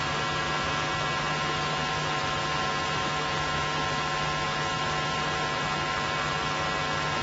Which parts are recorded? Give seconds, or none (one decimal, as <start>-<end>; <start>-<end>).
0.0-7.2